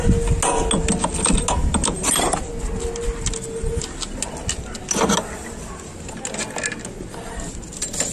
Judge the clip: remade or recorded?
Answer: recorded